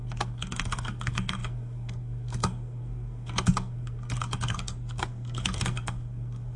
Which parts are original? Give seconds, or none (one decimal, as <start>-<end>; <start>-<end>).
none